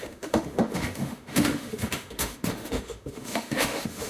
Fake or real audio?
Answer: fake